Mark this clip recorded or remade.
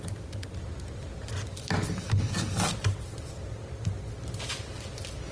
recorded